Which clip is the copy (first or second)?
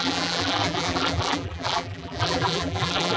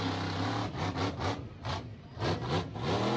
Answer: first